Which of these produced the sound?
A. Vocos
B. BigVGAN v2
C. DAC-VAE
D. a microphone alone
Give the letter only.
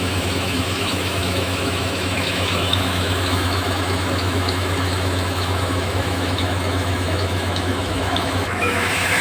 C